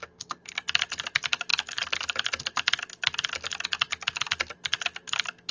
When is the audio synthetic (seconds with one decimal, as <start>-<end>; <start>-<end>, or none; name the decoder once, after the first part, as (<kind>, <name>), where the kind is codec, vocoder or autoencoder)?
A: none